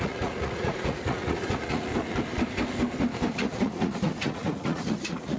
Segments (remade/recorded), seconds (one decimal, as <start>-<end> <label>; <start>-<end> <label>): 0.0-1.9 remade; 1.9-3.3 recorded; 3.3-5.4 remade